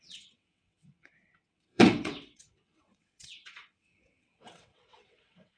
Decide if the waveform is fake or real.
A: fake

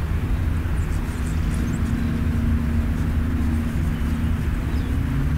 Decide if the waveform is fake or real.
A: real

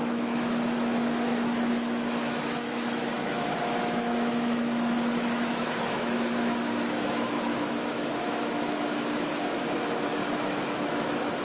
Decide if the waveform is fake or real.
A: fake